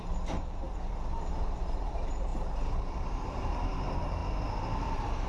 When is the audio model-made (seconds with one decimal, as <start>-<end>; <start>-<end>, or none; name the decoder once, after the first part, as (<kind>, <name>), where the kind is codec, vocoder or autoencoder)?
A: 0.0-4.2 (vocoder, BigVGAN v2); 4.8-5.3